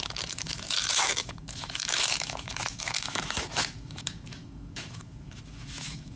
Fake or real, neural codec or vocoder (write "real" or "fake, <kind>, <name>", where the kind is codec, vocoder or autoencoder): fake, autoencoder, DAC-VAE